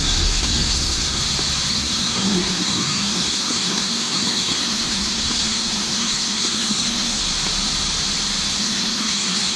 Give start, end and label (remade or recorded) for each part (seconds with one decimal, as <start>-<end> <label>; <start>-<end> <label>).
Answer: 0.0-1.2 remade; 1.2-1.7 recorded; 1.7-7.2 remade; 7.2-8.6 recorded; 8.6-9.6 remade